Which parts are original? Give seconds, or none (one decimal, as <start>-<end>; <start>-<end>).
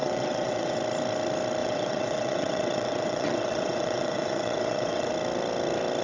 0.8-1.6; 5.1-6.0